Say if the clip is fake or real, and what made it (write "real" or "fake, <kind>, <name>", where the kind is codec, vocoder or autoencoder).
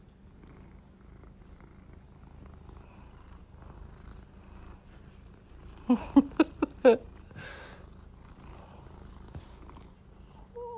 real